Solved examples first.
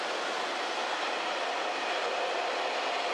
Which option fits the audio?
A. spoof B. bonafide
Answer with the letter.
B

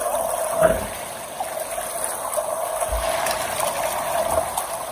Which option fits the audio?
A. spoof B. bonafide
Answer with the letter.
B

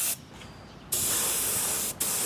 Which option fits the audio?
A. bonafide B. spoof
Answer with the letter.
A